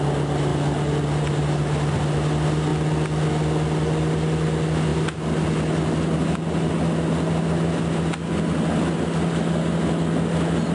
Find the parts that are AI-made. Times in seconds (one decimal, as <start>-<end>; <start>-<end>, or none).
none